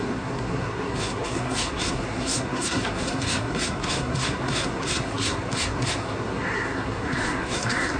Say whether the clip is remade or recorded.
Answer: remade